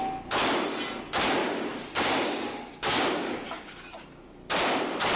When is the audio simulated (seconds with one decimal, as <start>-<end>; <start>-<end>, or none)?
1.4-4.2